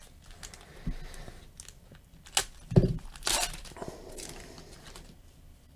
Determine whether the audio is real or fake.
real